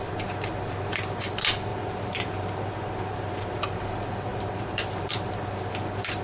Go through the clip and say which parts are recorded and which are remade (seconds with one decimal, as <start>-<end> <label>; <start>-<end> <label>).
0.0-1.7 recorded; 1.7-3.8 remade; 3.8-4.3 recorded; 4.3-5.4 remade; 5.4-6.2 recorded